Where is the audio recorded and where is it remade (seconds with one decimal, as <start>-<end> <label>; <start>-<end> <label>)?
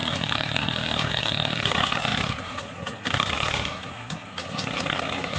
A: 0.0-5.4 remade